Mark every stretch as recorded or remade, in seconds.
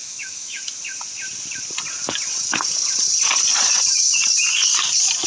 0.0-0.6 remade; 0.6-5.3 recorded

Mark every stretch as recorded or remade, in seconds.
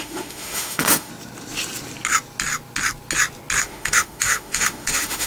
0.0-1.1 remade; 1.1-3.6 recorded; 3.6-5.3 remade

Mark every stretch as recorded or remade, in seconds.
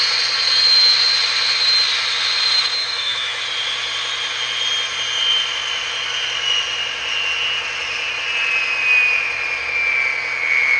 0.0-2.8 recorded; 2.8-3.4 remade; 3.4-10.8 recorded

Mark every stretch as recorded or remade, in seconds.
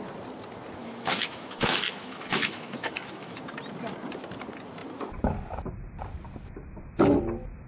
0.0-0.8 recorded; 0.8-3.4 remade; 3.4-7.7 recorded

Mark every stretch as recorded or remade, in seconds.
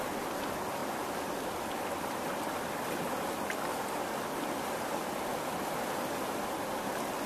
0.0-7.3 recorded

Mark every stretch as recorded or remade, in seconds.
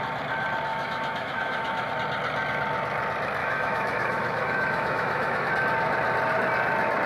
0.0-0.7 recorded; 0.7-1.9 remade; 1.9-3.4 recorded; 3.4-5.5 remade; 5.5-7.1 recorded